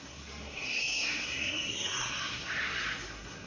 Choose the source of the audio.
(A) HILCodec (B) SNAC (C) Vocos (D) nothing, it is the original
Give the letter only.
B